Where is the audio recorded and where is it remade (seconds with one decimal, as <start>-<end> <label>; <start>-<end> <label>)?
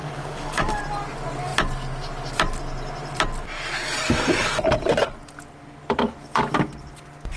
0.0-0.8 remade; 0.8-7.4 recorded